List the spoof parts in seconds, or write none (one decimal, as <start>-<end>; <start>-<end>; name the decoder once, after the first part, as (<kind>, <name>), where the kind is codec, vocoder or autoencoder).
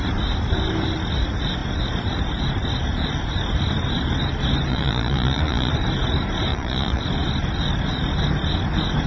4.7-5.7 (vocoder, Vocos); 6.5-7.0